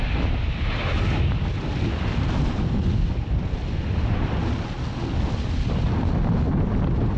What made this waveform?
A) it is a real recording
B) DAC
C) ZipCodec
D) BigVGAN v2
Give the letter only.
A